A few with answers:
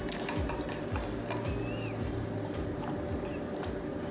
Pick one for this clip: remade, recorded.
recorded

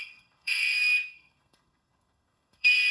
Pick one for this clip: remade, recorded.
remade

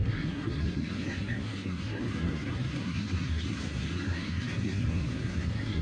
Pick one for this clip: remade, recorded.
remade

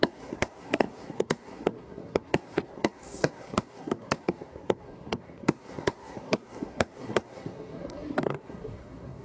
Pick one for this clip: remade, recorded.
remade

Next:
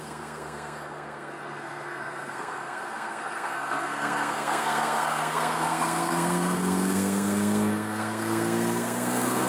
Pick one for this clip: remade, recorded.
remade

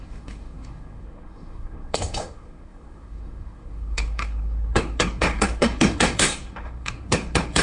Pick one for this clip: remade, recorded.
remade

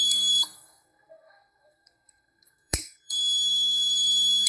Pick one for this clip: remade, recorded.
remade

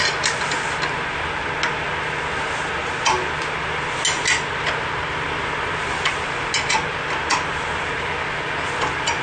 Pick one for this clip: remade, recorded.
recorded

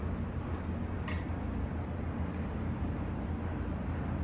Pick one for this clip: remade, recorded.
recorded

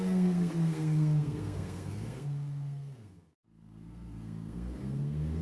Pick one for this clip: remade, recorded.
remade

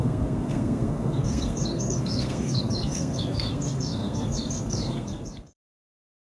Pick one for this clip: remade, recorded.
remade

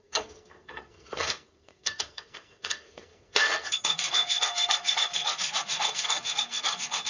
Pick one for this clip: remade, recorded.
remade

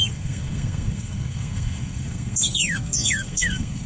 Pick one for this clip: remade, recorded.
remade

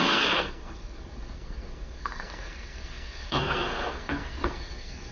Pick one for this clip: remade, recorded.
remade